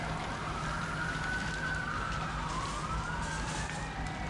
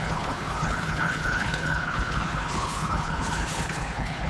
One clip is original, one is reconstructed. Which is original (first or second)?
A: first